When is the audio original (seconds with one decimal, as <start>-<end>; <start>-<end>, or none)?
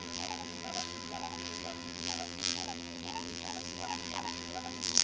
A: none